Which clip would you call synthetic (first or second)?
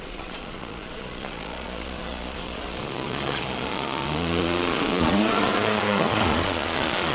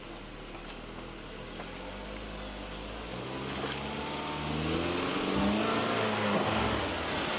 first